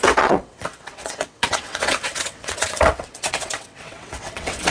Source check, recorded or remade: remade